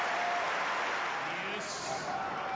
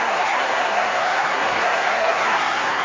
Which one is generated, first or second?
second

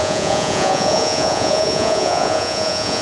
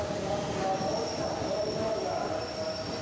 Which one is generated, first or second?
first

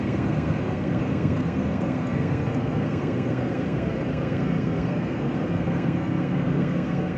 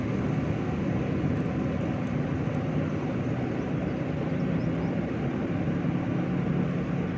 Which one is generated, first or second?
first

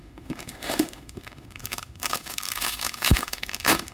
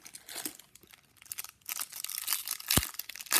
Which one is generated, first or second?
first